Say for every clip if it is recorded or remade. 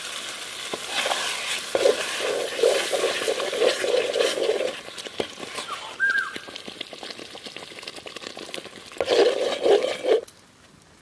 recorded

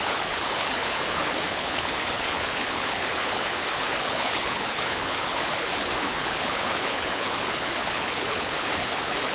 remade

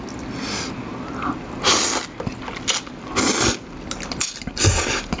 recorded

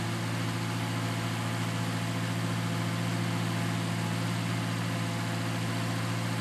recorded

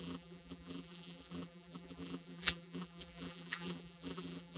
remade